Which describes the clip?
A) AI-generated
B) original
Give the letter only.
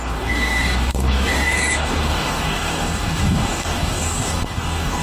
A